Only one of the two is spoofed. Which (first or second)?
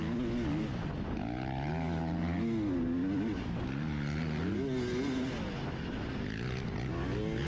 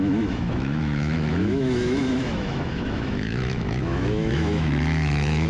second